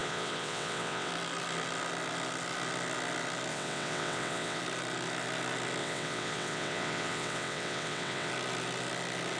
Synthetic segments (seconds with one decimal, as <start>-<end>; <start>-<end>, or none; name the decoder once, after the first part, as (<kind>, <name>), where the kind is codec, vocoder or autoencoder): 0.0-1.1 (vocoder, WaveNeXt); 3.5-4.6; 5.8-8.3